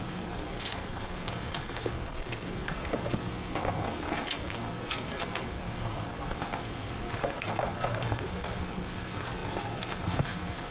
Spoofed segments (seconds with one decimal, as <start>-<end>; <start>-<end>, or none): 0.0-10.7